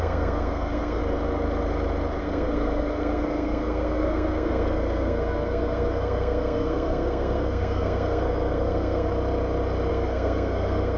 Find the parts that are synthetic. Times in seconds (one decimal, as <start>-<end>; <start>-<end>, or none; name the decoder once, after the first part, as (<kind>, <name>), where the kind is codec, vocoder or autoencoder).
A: 0.0-1.0 (codec, SNAC); 2.2-9.1; 9.9-11.0